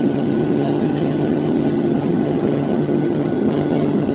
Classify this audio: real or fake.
fake